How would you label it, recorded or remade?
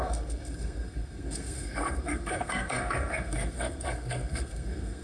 remade